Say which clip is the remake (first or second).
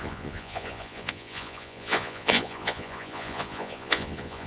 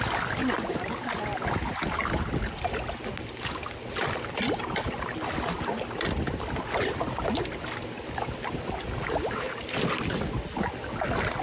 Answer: first